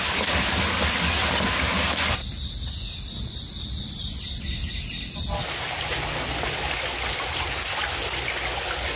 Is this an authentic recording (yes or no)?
yes